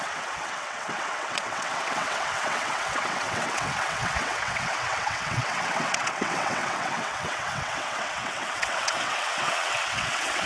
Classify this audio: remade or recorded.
remade